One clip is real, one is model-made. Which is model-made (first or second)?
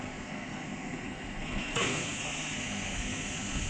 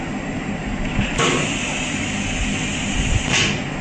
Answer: first